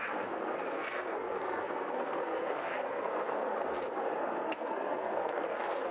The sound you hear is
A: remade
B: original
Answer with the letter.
A